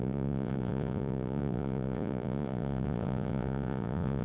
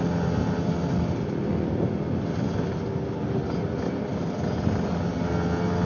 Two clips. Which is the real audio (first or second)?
second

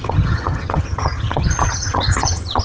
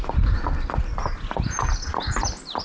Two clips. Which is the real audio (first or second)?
second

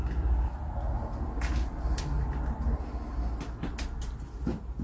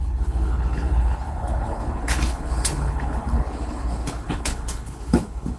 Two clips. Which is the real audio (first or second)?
first